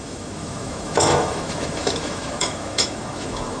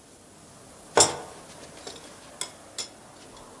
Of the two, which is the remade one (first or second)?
first